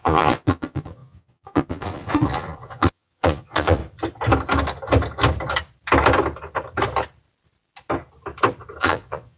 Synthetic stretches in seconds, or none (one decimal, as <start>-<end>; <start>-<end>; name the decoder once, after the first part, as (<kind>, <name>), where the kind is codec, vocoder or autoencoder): 0.0-3.8 (vocoder, Vocos); 8.8-9.4